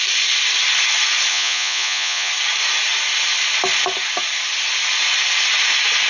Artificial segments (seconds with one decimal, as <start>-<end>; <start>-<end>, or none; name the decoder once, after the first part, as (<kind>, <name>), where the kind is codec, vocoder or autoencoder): 1.3-2.3 (vocoder, Vocos)